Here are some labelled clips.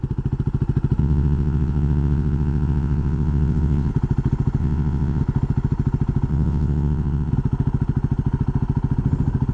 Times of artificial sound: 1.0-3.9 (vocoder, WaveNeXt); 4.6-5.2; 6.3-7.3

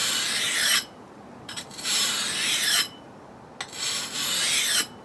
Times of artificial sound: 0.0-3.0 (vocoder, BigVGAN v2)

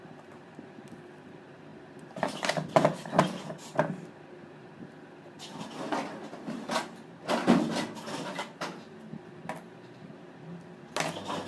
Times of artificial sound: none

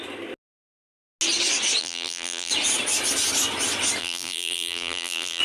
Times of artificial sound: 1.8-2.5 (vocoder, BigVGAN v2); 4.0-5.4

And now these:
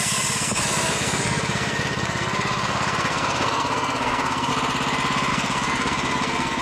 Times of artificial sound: 0.0-4.5 (codec, SNAC); 5.3-6.6

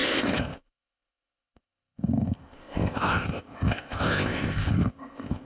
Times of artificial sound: 0.0-5.5 (codec, ZipCodec)

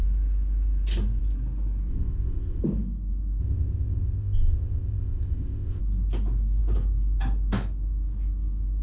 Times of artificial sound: 1.9-2.6 (codec, ZipCodec); 3.4-5.8

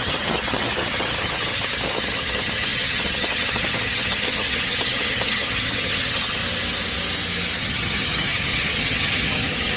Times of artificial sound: 0.0-6.4 (vocoder, HiFi-GAN); 7.6-9.8